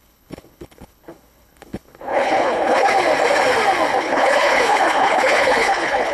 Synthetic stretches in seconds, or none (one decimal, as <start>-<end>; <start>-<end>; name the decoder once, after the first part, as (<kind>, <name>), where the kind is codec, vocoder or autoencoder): 0.0-2.9 (codec, HILCodec); 4.0-6.1